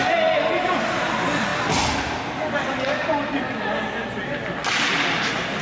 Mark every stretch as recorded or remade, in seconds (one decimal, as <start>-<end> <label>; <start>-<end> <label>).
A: 0.0-5.6 recorded